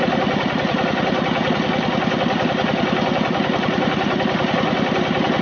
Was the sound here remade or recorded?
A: recorded